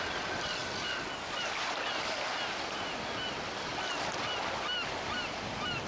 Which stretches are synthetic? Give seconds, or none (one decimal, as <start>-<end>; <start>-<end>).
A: none